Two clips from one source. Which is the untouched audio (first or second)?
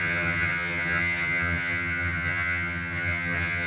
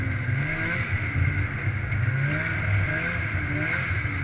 second